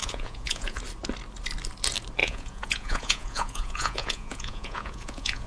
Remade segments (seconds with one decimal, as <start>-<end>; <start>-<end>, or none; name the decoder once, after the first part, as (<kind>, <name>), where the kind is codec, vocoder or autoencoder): 0.0-0.8 (vocoder, Vocos); 2.2-5.5